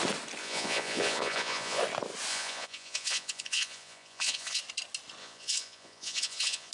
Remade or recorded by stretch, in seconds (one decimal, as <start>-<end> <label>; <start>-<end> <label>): 0.0-0.4 recorded; 0.4-1.8 remade; 1.8-2.3 recorded; 2.3-4.6 remade; 4.6-5.2 recorded; 5.2-6.7 remade